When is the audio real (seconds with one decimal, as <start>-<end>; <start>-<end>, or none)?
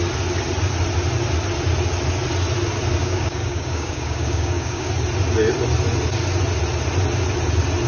0.0-3.0; 4.9-7.9